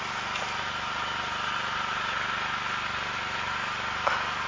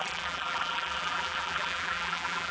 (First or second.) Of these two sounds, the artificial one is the second